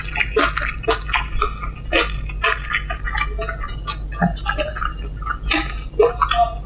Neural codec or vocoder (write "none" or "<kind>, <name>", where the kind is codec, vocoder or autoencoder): none